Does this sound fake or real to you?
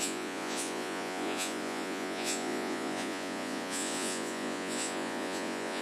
fake